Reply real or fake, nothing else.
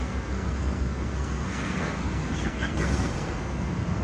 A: fake